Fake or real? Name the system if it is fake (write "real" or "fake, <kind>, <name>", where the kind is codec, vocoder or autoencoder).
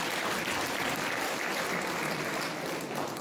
fake, vocoder, BigVGAN v2